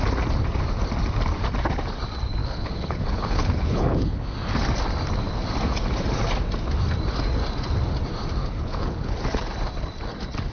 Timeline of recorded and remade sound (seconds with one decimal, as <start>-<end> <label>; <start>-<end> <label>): 0.0-2.4 recorded; 2.4-4.2 remade; 4.2-8.4 recorded; 8.4-9.2 remade; 9.2-10.5 recorded